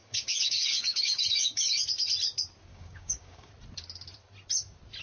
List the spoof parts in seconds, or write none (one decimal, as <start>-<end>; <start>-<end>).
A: 0.0-1.7; 2.7-3.5